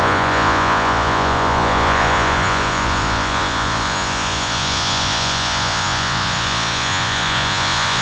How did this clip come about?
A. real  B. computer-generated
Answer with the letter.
B